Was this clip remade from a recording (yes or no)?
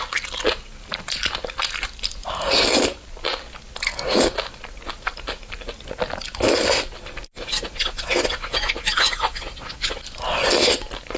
no